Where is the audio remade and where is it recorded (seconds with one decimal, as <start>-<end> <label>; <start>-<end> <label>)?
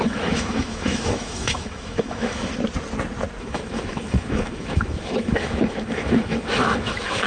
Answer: 0.0-2.5 remade; 2.5-3.4 recorded; 3.4-7.3 remade